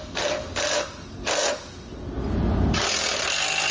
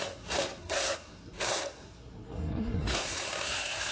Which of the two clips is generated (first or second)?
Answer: second